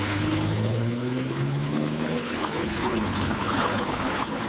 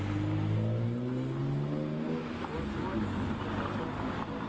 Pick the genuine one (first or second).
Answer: second